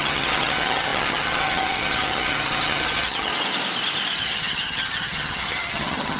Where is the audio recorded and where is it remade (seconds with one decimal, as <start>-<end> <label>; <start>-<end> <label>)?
0.0-3.3 remade; 3.3-4.2 recorded; 4.2-6.2 remade